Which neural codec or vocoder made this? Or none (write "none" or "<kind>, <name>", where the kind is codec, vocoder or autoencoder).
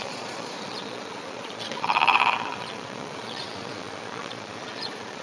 vocoder, Vocos